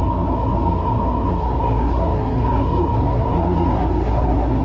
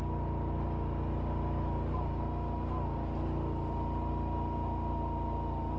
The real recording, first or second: second